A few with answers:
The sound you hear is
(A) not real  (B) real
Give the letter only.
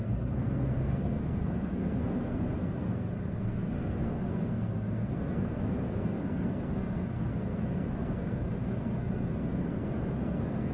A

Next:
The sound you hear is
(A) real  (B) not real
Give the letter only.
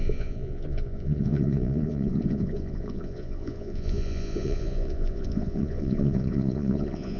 B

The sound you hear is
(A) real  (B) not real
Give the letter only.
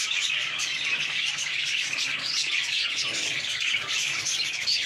B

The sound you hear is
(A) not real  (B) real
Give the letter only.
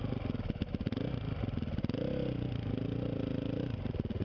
B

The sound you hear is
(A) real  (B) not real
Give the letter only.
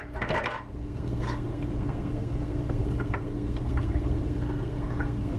B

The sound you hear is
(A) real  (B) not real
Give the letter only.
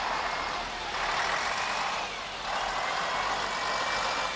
A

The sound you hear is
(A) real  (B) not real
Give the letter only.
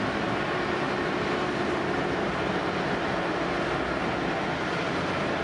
A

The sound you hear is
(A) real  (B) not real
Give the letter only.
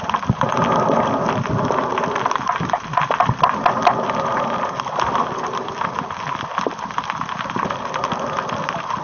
A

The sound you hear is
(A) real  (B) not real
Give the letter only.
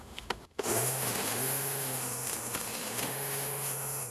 B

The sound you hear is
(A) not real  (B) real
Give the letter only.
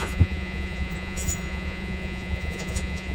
A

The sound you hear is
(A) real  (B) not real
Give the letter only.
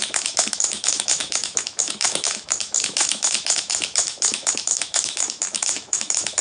B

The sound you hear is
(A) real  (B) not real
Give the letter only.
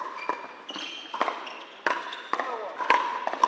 A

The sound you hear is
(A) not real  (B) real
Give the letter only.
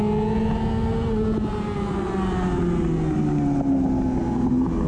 B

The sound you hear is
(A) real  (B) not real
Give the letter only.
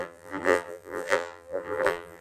B